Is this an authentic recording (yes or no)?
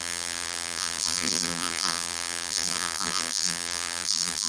no